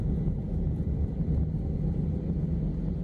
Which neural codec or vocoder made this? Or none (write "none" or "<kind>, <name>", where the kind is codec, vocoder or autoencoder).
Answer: none